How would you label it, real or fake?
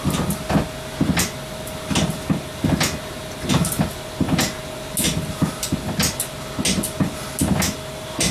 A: real